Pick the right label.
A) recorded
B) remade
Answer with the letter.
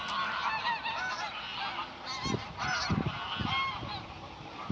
A